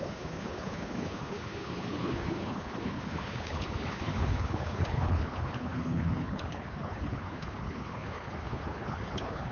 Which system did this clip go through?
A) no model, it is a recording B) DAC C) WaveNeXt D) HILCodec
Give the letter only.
D